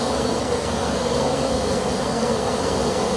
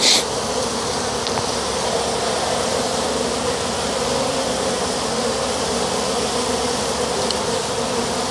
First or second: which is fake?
first